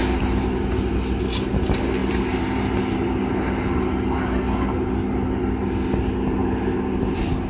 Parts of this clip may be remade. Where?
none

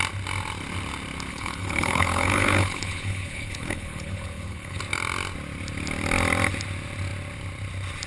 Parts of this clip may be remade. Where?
1.3-4.8 (codec, HILCodec)

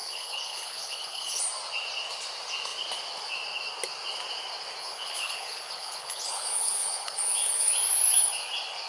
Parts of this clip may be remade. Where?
0.0-1.4 (codec, HILCodec); 4.8-7.7

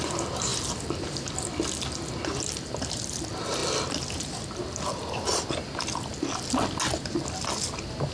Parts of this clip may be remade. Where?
none

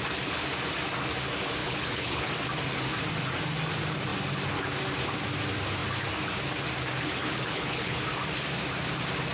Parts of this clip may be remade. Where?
1.6-2.3 (codec, HILCodec); 7.2-8.0

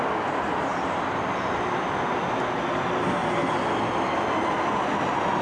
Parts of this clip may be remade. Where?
none

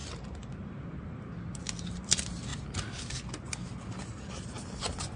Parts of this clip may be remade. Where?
none

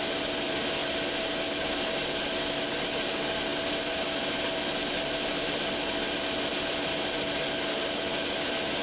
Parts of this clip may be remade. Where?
none